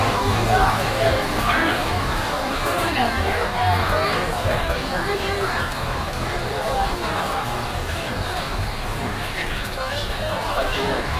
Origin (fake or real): fake